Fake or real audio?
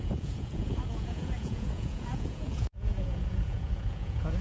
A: fake